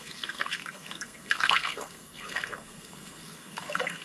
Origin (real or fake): fake